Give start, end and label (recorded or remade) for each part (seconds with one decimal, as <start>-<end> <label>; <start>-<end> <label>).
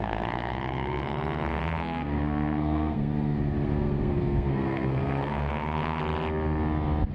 0.0-6.0 remade; 6.0-7.1 recorded